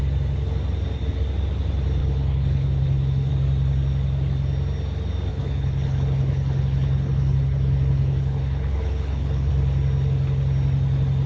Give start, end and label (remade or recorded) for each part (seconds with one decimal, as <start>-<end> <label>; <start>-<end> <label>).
0.0-2.0 recorded; 2.0-3.3 remade; 3.3-5.3 recorded; 5.3-9.5 remade; 9.5-11.3 recorded